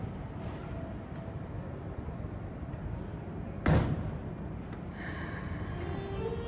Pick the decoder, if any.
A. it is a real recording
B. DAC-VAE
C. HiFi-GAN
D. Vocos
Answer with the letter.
A